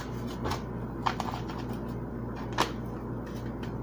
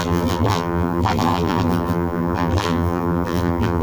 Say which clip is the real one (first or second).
first